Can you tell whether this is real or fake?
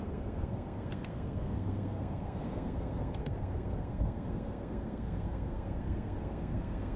fake